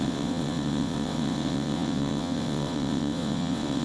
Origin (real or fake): fake